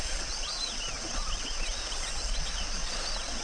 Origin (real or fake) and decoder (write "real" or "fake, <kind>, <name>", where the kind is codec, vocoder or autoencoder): fake, vocoder, Vocos